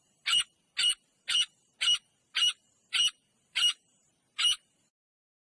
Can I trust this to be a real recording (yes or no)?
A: yes